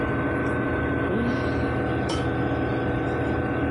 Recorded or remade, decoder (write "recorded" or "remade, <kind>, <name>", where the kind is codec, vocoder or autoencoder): recorded